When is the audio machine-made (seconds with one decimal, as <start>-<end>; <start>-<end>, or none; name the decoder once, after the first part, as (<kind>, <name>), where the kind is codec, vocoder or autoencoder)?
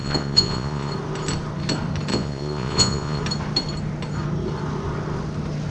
0.0-0.9 (vocoder, Vocos); 2.1-3.2